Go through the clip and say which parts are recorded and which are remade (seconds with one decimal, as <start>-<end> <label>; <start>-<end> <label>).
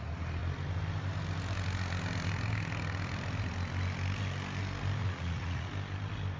0.0-5.0 recorded; 5.0-5.7 remade; 5.7-6.4 recorded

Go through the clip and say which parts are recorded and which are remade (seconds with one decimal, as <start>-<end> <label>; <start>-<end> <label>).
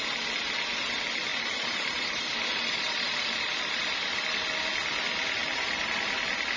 0.0-1.3 recorded; 1.3-3.7 remade; 3.7-5.4 recorded; 5.4-6.0 remade; 6.0-6.6 recorded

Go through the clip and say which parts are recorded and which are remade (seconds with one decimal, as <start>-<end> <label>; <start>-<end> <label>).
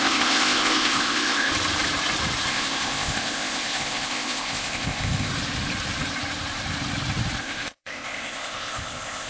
0.0-1.5 remade; 1.5-2.5 recorded; 2.5-5.3 remade; 5.3-7.4 recorded; 7.4-9.3 remade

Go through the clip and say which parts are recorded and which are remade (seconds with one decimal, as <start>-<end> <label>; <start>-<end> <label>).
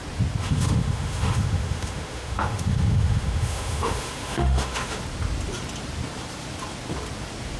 0.0-0.4 recorded; 0.4-5.0 remade; 5.0-7.6 recorded